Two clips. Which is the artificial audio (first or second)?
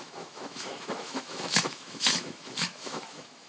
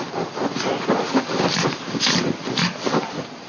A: first